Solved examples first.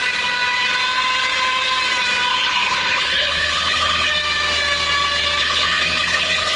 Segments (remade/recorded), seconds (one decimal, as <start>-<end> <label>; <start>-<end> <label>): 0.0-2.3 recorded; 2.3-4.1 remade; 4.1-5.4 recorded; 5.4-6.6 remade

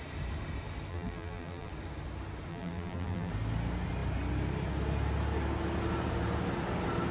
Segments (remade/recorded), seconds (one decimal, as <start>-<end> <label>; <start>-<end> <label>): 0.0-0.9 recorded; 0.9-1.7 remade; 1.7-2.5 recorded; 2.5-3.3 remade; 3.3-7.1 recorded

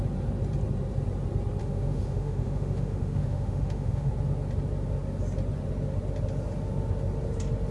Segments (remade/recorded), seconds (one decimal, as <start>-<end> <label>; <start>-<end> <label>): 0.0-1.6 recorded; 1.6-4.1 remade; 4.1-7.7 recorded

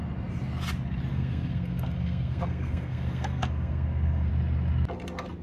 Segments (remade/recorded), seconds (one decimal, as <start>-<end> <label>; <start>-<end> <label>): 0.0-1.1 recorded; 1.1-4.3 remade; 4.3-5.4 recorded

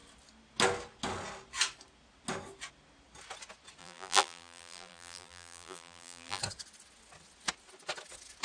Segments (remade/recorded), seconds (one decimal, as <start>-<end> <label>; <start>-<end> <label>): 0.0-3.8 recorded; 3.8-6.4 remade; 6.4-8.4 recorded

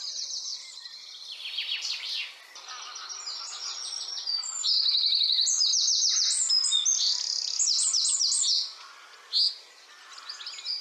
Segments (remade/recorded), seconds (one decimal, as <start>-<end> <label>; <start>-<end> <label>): 0.0-10.8 recorded